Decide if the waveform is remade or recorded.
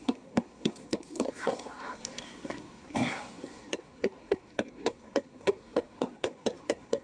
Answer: remade